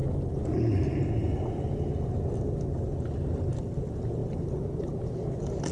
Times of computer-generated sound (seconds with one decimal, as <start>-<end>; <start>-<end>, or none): none